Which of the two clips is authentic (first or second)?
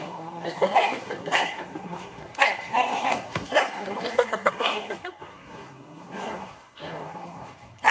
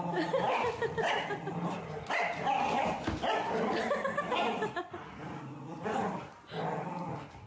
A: second